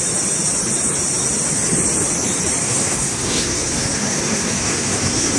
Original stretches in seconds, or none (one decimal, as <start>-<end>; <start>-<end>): 0.0-2.6